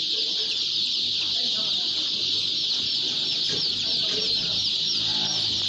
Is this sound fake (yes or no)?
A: yes